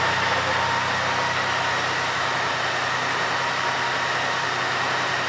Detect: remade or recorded recorded